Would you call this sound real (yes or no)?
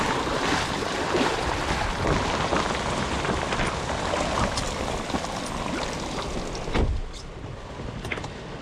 yes